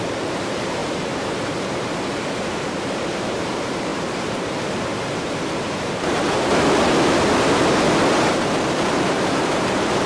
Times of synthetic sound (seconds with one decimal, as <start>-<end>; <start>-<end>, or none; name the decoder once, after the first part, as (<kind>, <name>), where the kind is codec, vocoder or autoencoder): 0.0-6.5 (vocoder, BigVGAN v2); 8.3-10.1